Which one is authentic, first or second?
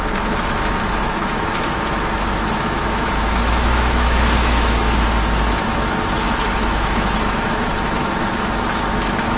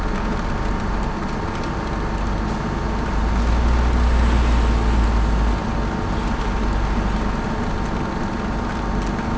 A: second